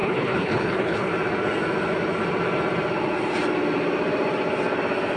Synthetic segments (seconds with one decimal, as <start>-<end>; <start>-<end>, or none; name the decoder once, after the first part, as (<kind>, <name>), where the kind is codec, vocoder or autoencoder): 0.0-1.1 (codec, HILCodec)